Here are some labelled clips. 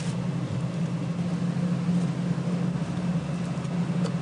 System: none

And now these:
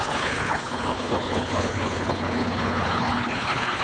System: codec, HILCodec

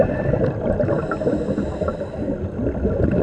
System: none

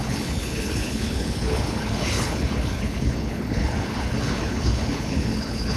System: codec, HILCodec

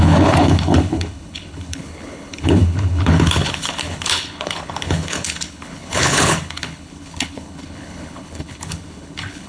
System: codec, HILCodec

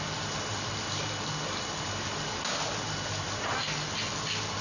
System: none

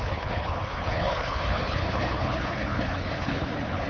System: codec, HILCodec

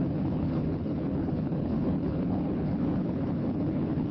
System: codec, HILCodec